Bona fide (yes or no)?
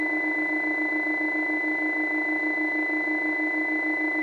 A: yes